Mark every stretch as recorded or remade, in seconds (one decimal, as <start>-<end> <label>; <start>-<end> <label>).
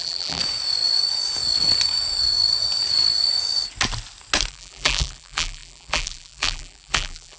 0.0-0.4 remade; 0.4-4.5 recorded; 4.5-7.4 remade